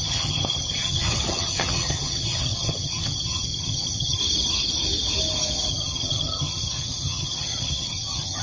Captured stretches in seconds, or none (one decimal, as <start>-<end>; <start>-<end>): 4.2-5.7